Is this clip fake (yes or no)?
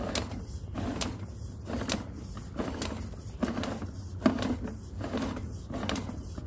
no